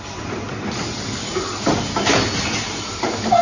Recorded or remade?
recorded